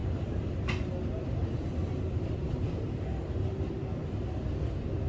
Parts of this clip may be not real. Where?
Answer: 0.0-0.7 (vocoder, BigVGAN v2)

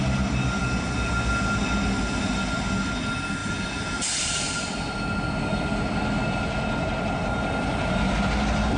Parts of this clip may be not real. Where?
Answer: 3.4-4.7 (vocoder, BigVGAN v2); 5.5-6.0

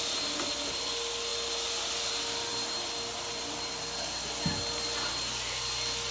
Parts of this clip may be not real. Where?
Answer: none

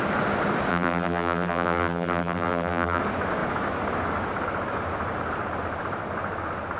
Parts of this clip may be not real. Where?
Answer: 0.7-3.0 (vocoder, BigVGAN v2)

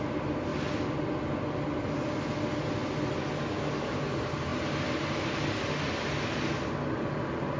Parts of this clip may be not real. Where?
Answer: none